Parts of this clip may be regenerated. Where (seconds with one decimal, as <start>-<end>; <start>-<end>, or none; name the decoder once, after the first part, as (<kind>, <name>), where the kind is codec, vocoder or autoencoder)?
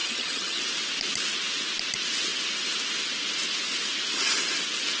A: 0.0-0.6 (vocoder, HiFi-GAN)